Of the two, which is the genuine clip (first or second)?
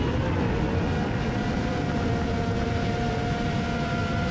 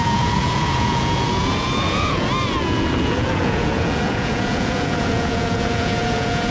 first